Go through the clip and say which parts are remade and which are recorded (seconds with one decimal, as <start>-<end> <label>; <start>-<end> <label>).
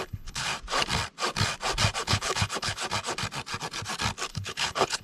0.0-0.5 remade; 0.5-2.0 recorded; 2.0-2.8 remade; 2.8-4.3 recorded; 4.3-5.0 remade